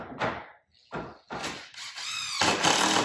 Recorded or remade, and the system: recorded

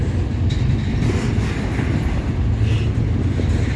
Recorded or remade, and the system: recorded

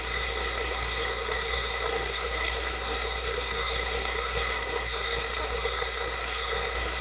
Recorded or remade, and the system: remade, codec, SNAC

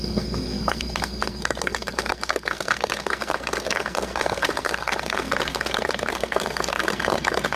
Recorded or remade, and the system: remade, codec, SNAC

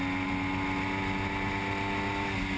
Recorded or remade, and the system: recorded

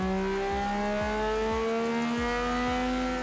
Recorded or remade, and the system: recorded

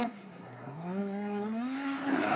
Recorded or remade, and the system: remade, codec, SNAC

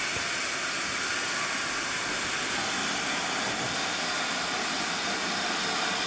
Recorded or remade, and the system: recorded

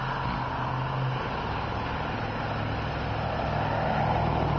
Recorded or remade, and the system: recorded